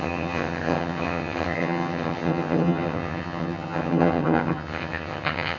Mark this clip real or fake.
fake